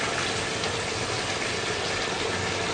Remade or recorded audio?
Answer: recorded